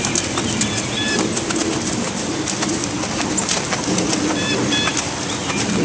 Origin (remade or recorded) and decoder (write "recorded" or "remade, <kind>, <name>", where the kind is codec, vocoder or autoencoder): recorded